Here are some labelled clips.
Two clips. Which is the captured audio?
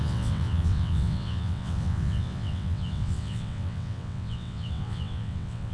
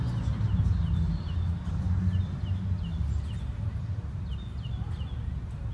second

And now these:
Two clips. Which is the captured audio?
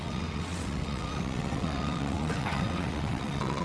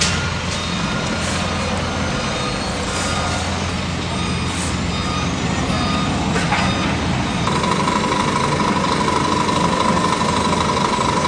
second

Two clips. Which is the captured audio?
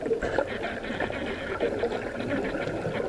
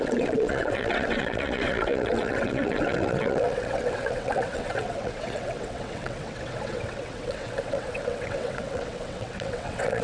first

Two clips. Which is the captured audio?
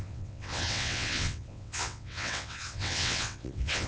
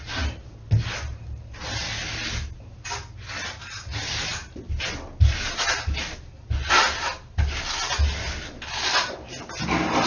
second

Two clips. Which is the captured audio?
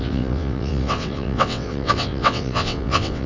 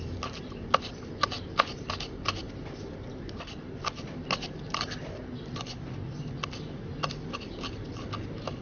second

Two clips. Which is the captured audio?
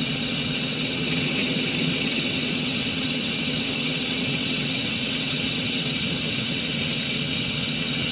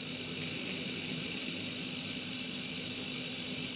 second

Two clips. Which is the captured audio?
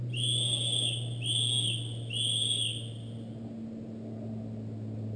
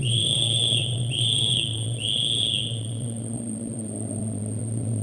first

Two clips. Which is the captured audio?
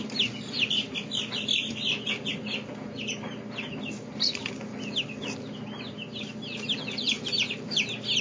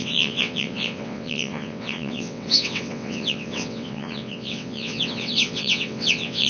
first